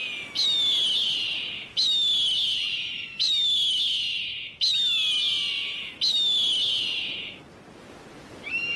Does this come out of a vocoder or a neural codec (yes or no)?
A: no